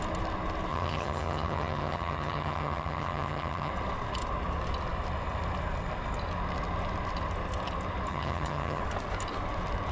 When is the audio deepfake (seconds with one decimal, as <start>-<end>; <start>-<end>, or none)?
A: 0.7-3.7; 8.1-8.8